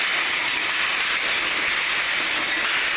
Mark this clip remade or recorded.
recorded